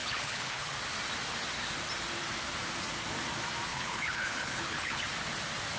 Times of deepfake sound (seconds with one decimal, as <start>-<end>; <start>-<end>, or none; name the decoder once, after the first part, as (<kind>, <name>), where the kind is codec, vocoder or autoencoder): 0.0-0.7 (codec, HILCodec); 3.7-5.0